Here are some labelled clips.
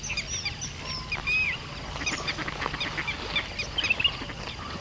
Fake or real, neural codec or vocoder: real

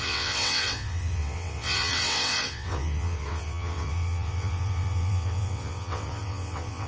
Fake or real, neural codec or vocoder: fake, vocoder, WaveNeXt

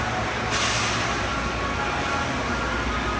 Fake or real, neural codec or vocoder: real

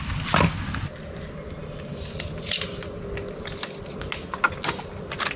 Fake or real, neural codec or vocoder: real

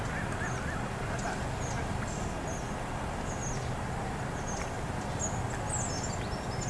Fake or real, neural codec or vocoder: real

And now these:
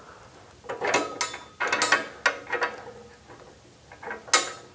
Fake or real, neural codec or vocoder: real